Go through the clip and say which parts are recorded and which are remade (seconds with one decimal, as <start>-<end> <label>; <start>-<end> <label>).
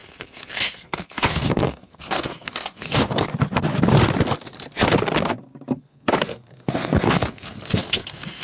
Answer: 0.0-3.3 remade; 3.3-5.8 recorded; 5.8-8.4 remade